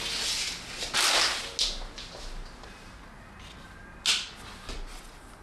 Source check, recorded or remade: recorded